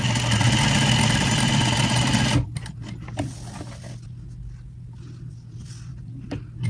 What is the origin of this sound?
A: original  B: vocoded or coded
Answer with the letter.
A